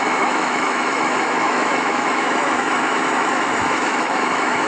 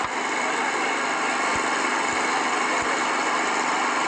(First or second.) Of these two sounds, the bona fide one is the second